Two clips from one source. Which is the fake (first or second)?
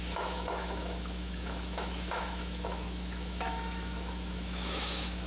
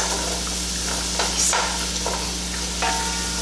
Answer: first